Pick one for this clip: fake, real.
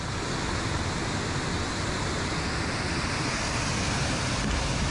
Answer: real